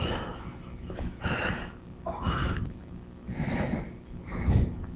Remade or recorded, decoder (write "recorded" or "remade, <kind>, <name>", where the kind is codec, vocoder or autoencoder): remade, autoencoder, DAC-VAE